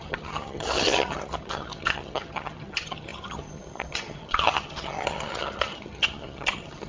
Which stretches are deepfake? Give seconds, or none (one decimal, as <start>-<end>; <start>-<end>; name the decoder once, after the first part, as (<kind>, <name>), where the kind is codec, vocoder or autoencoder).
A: 0.0-6.9 (vocoder, HiFi-GAN)